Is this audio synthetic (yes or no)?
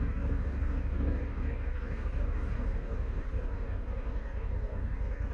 yes